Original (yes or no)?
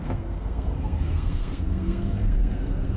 no